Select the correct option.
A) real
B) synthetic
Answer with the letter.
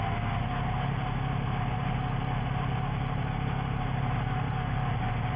A